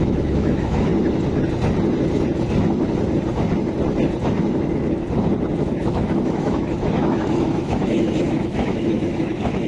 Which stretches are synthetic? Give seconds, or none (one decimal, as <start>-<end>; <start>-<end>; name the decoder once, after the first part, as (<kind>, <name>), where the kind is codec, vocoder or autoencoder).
0.0-0.9 (autoencoder, DAC-VAE); 5.6-9.7